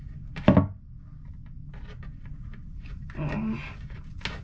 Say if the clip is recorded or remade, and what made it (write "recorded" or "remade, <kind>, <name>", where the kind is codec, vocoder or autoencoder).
recorded